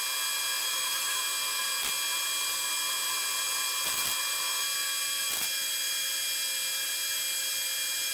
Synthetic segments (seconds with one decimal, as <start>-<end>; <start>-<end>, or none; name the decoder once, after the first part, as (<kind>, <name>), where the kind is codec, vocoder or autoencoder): 0.6-1.2 (autoencoder, DAC-VAE)

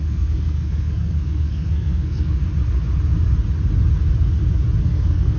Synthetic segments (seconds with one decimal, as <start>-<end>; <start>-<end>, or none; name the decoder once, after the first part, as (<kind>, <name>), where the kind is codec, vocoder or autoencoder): 0.0-2.4 (codec, SNAC); 4.8-5.4

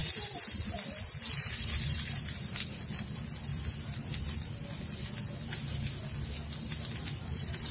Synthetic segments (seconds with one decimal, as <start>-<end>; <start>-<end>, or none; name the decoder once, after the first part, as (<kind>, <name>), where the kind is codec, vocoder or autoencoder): 0.0-2.8 (vocoder, BigVGAN v2); 3.5-4.8; 7.0-7.7

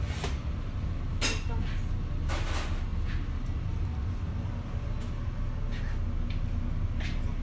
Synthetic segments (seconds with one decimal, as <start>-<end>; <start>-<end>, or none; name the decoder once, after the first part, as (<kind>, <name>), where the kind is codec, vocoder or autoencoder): none

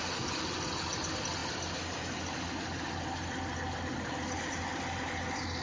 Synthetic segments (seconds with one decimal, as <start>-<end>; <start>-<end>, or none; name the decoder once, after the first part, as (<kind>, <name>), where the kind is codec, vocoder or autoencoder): none

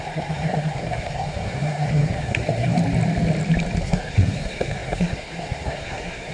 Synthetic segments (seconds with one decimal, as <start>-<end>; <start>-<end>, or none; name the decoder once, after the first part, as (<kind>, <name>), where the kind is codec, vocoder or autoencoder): 0.0-2.8 (codec, SNAC); 3.8-6.3

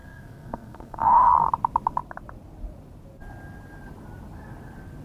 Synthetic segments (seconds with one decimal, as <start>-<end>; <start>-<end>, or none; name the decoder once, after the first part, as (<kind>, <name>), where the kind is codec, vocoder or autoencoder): 0.0-1.5 (codec, SNAC)

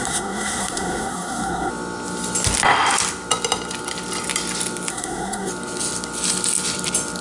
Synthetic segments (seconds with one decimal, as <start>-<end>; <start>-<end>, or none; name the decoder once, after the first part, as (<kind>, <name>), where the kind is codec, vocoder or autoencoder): 0.0-1.7 (codec, SNAC); 4.9-5.5